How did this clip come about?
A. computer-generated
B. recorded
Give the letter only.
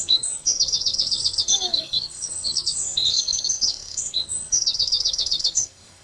A